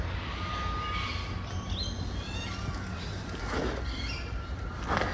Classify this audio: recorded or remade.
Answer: recorded